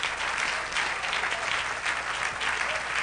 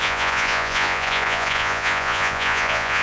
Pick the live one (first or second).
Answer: first